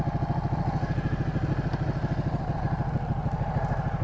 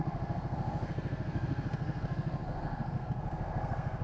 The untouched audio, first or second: first